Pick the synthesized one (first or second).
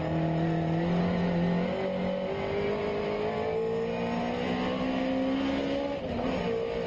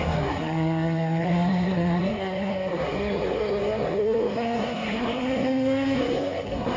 second